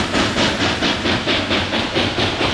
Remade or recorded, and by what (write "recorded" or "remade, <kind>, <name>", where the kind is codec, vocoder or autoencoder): recorded